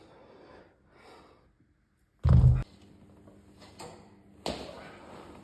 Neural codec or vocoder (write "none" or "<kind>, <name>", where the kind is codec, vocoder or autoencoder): none